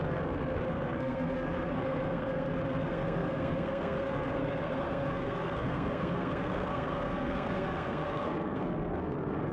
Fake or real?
fake